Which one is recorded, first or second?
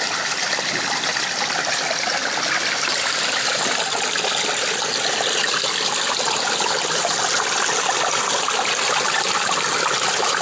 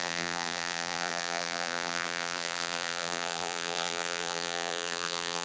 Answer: first